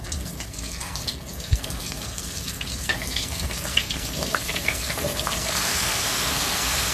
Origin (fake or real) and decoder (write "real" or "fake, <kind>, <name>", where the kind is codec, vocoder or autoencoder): fake, codec, SNAC